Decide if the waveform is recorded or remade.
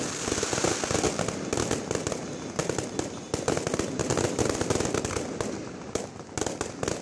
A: recorded